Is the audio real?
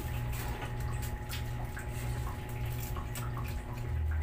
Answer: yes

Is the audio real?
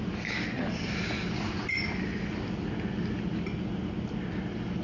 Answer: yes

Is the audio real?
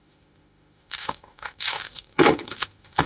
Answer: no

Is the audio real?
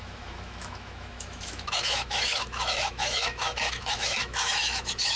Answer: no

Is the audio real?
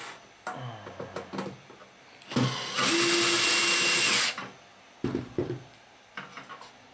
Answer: yes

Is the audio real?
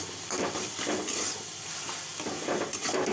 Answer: yes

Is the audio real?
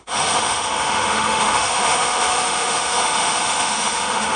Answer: no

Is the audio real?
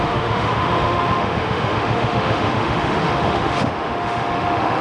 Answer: no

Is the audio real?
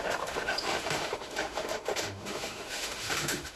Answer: no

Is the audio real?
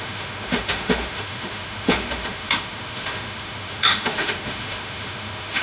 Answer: no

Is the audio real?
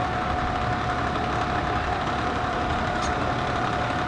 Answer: yes